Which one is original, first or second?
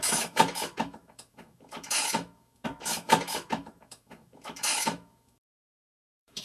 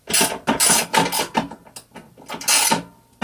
second